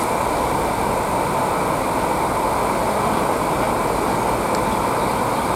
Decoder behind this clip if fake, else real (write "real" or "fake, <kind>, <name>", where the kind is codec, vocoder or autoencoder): real